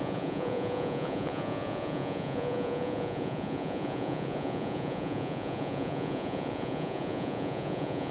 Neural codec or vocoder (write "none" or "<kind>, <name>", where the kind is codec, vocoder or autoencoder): vocoder, Vocos